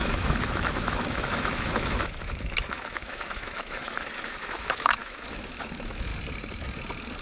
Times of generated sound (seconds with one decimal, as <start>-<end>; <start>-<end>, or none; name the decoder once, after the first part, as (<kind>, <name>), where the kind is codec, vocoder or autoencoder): 0.0-6.1 (autoencoder, DAC-VAE)